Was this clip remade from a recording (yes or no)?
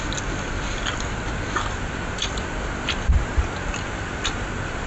no